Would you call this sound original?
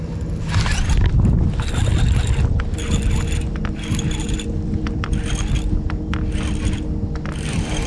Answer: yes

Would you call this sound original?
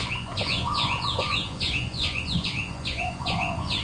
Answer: no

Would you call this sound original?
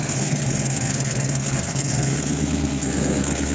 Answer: no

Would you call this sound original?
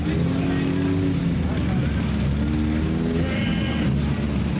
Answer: yes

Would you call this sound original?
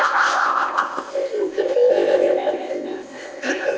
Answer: no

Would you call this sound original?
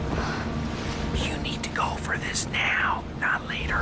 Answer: yes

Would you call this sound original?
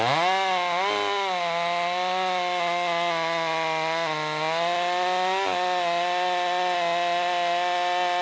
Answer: yes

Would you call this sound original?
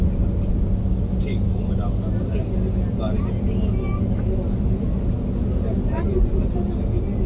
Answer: yes